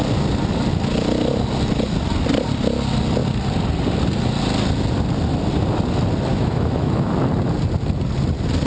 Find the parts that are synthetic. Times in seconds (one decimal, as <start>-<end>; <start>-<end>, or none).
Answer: 6.3-7.1